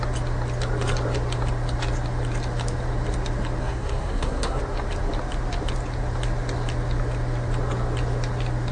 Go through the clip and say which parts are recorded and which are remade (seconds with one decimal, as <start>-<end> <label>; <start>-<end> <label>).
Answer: 0.0-3.6 recorded; 3.6-4.6 remade; 4.6-8.7 recorded